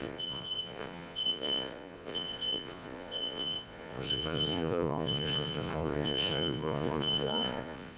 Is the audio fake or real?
fake